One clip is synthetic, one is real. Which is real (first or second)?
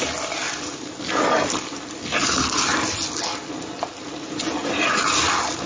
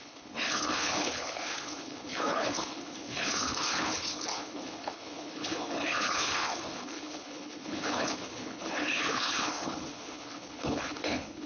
first